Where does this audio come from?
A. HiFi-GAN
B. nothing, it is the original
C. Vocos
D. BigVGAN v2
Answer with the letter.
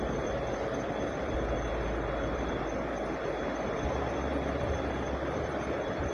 D